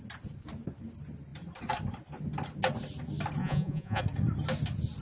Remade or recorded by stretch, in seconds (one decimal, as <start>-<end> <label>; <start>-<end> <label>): 0.0-3.4 recorded; 3.4-4.0 remade; 4.0-5.0 recorded